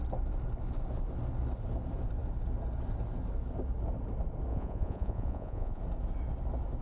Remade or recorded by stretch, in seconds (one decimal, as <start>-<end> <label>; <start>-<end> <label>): 0.0-4.5 recorded; 4.5-5.8 remade; 5.8-6.8 recorded